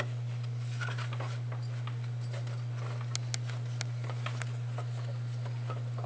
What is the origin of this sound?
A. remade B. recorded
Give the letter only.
B